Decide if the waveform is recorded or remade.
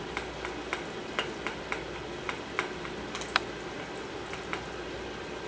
recorded